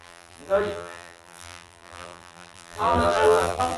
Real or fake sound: fake